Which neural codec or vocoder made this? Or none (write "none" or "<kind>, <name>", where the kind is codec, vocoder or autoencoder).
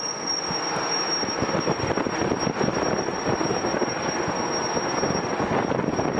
none